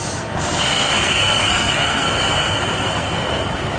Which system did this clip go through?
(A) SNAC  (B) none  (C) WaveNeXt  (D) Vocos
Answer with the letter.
A